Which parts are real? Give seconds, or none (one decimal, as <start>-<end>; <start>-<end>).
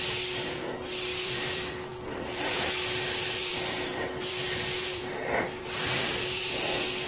0.0-1.1; 2.7-4.9; 6.5-7.1